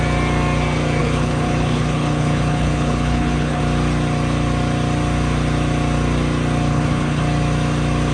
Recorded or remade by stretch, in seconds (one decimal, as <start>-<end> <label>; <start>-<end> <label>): 0.0-1.0 recorded; 1.0-3.6 remade; 3.6-6.7 recorded; 6.7-7.2 remade; 7.2-8.1 recorded